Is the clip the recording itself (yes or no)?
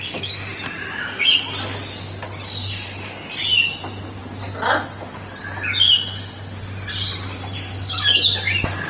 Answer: yes